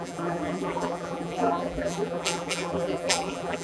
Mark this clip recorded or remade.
remade